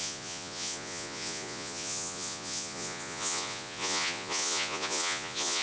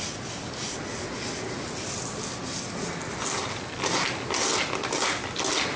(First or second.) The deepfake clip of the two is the first